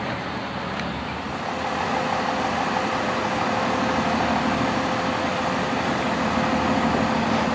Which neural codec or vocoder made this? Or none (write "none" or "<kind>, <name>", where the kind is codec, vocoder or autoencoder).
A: none